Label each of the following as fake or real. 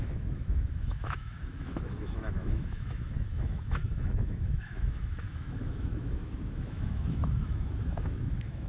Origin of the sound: fake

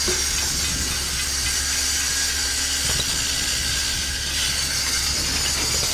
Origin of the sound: real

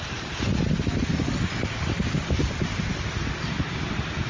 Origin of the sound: real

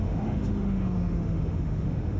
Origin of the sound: fake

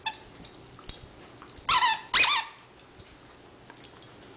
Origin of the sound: real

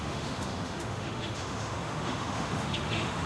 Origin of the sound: fake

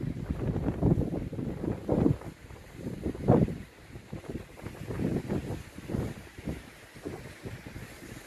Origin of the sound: real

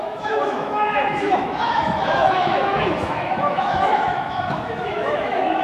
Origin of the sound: fake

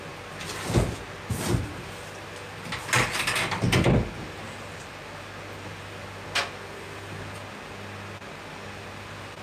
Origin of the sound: real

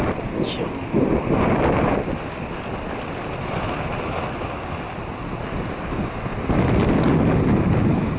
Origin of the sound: real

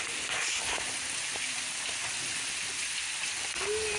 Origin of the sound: real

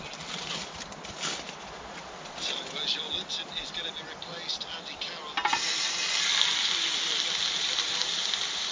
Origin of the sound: real